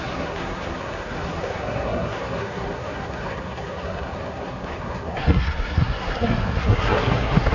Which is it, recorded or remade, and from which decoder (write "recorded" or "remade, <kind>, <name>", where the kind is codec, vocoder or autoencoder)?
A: remade, codec, SNAC